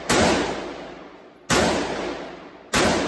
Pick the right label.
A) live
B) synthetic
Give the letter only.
A